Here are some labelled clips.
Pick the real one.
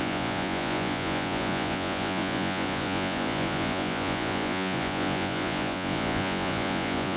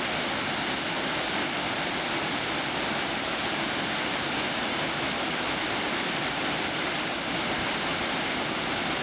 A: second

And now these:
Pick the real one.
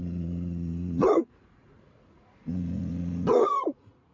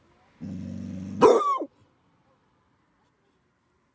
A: second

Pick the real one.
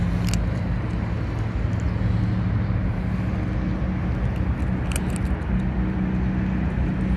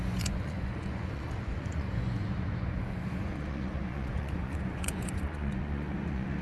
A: first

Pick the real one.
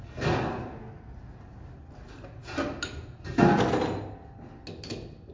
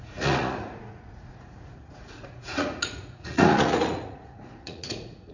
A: first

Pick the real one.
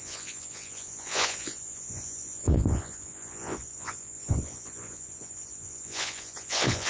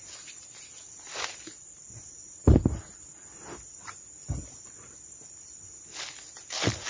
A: second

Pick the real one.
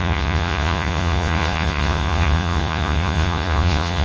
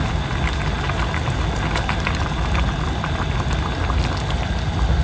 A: second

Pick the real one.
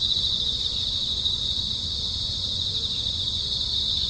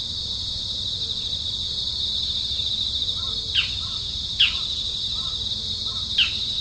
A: second